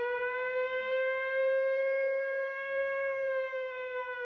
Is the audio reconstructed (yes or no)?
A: yes